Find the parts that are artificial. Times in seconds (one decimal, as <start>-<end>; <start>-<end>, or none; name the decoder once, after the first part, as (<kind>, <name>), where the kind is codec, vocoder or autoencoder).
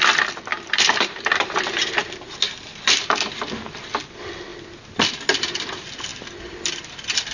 0.5-1.6 (vocoder, BigVGAN v2)